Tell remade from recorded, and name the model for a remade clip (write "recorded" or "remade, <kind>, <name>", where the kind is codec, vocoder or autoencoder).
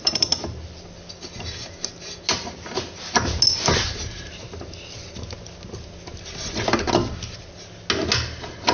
recorded